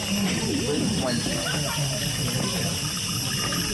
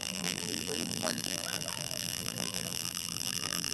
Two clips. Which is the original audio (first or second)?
first